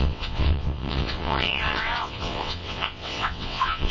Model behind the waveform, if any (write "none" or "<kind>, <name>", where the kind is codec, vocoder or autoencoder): vocoder, WaveNeXt